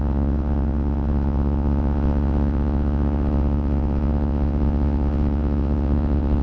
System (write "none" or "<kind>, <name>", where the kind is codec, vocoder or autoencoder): vocoder, WaveNeXt